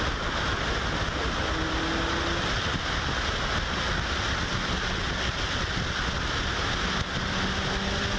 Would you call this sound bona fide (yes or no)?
yes